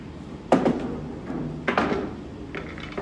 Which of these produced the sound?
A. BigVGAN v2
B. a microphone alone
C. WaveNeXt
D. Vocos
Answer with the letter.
B